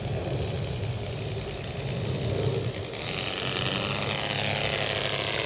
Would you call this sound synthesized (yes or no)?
no